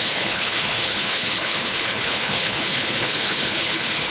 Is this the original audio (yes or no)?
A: no